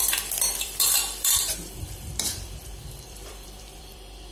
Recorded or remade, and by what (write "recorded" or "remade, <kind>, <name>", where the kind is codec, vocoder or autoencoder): remade, vocoder, BigVGAN v2